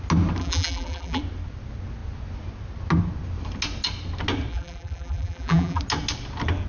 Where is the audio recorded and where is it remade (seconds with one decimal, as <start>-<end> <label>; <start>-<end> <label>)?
0.0-0.4 recorded; 0.4-1.2 remade; 1.2-4.5 recorded; 4.5-5.8 remade; 5.8-6.7 recorded